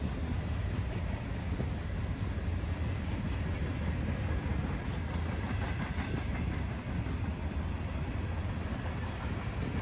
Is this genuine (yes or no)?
yes